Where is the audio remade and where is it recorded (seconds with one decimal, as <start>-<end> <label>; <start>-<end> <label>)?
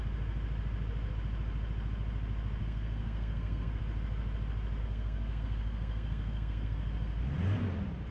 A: 0.0-2.6 recorded; 2.6-3.8 remade; 3.8-4.8 recorded; 4.8-7.2 remade; 7.2-8.1 recorded